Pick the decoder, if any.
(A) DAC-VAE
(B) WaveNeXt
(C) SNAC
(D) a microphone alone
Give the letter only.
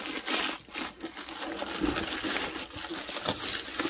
D